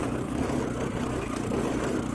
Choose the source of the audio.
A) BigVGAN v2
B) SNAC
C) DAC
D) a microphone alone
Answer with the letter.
D